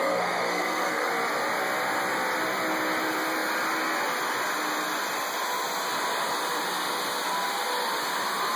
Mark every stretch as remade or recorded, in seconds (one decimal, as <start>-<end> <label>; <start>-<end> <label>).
0.0-1.1 remade; 1.1-8.6 recorded